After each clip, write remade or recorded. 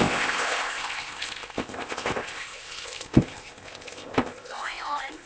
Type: remade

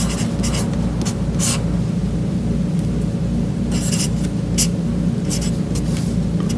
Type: recorded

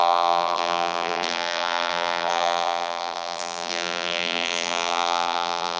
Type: remade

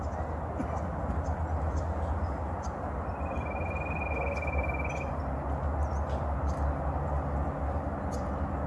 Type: recorded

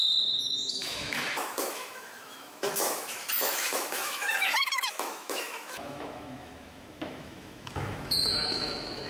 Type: remade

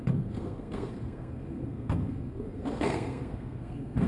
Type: remade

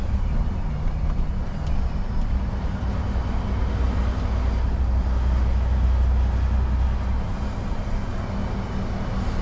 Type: recorded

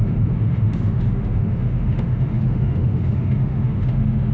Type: remade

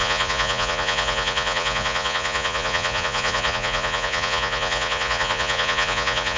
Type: remade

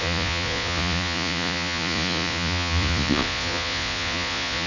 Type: remade